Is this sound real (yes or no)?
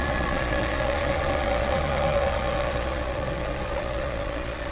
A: no